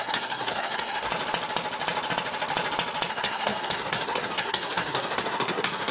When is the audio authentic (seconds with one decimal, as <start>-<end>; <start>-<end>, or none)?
1.1-3.1